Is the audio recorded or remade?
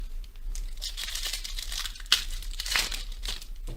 remade